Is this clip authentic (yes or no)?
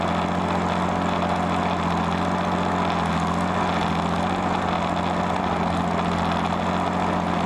yes